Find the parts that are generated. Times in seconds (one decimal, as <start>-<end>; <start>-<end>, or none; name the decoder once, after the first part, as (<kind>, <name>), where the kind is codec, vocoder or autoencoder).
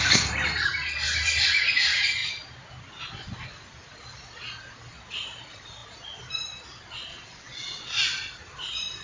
7.1-7.9 (vocoder, WaveNeXt)